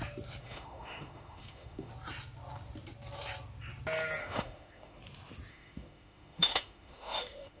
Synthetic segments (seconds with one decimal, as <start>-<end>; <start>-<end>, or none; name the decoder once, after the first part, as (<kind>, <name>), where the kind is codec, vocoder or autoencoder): 0.4-1.9 (autoencoder, DAC-VAE); 4.2-5.0; 5.5-7.6